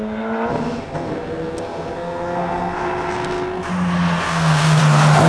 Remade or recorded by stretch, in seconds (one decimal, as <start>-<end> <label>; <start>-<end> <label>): 0.0-0.5 recorded; 0.5-3.7 remade; 3.7-4.2 recorded; 4.2-4.8 remade; 4.8-5.3 recorded